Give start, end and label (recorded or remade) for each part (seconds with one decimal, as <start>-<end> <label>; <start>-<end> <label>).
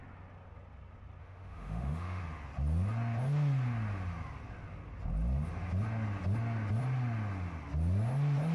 0.0-1.2 recorded; 1.2-2.2 remade; 2.2-8.5 recorded